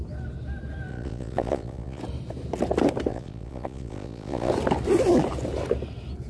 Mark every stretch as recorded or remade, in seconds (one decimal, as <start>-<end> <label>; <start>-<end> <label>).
0.0-0.9 recorded; 0.9-2.0 remade; 2.0-3.1 recorded; 3.1-4.5 remade; 4.5-6.3 recorded